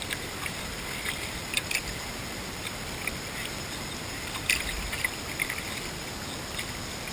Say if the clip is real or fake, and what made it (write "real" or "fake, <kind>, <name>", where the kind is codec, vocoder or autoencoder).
real